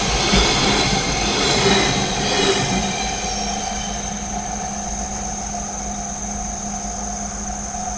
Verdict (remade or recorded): recorded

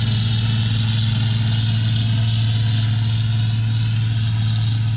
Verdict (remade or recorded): recorded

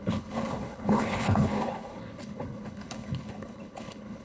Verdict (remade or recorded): remade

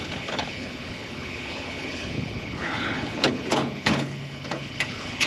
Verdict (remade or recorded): remade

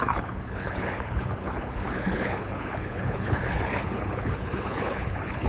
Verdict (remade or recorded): remade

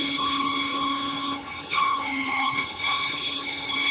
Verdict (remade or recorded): remade